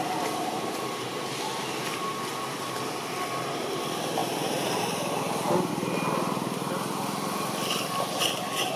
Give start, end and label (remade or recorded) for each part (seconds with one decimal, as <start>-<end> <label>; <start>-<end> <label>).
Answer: 0.0-8.8 recorded